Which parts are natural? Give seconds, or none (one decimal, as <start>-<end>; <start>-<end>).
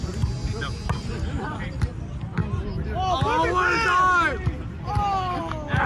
0.4-1.1; 2.4-5.9